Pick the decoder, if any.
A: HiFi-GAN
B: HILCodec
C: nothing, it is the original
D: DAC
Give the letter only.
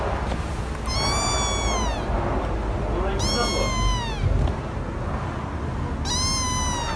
C